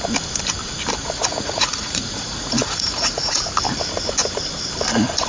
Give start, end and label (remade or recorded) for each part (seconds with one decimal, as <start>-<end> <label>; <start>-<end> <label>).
0.0-1.0 recorded; 1.0-3.4 remade; 3.4-5.3 recorded